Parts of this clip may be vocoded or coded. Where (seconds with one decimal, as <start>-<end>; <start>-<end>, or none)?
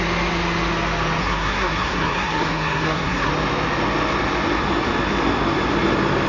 1.2-3.3